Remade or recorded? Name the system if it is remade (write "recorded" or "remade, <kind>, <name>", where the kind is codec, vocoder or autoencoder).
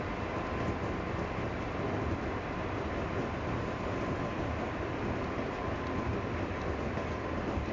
recorded